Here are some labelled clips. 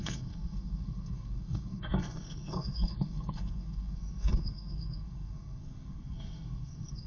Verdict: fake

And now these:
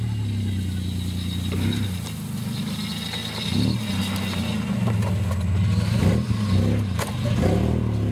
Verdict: real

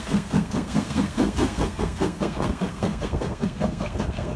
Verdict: fake